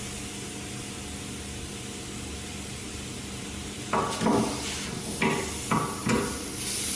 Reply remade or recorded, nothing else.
recorded